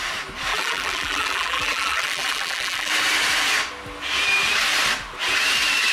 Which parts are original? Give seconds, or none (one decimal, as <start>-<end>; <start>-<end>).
0.0-0.5; 2.9-5.9